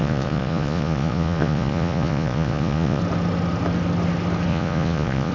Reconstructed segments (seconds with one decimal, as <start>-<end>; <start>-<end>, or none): 0.0-3.0; 4.5-5.3